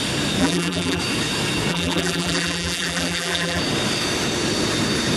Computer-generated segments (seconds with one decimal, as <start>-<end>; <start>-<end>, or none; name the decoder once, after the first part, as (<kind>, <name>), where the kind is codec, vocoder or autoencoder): 0.4-1.0 (vocoder, BigVGAN v2); 1.7-3.6